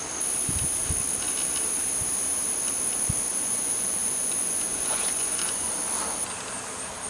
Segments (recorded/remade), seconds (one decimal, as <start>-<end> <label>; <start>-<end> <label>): 0.0-3.3 recorded; 3.3-5.7 remade; 5.7-7.1 recorded